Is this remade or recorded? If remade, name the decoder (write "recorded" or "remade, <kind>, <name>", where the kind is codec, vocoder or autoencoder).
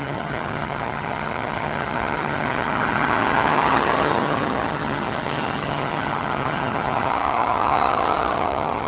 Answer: remade, vocoder, HiFi-GAN